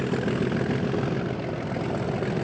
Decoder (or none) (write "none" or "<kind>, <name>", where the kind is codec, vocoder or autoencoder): none